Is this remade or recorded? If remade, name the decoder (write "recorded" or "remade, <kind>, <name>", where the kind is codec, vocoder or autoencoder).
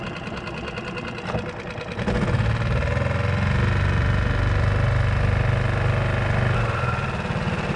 recorded